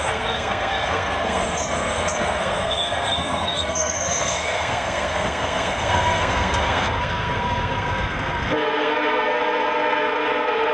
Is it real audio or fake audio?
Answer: fake